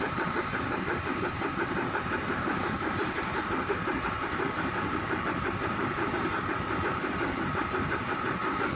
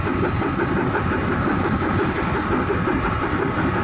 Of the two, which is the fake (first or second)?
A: first